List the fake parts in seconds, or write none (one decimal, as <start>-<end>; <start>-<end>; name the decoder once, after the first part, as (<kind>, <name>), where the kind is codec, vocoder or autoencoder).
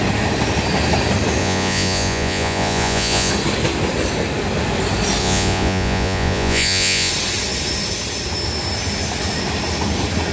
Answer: 1.4-3.3 (vocoder, Vocos); 5.2-7.1